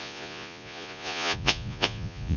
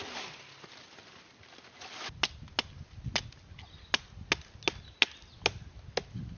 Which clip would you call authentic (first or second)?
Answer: second